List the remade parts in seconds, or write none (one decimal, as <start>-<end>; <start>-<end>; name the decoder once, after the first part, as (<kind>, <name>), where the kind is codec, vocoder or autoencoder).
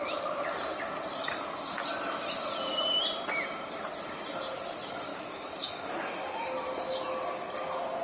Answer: 5.1-5.9 (autoencoder, DAC-VAE)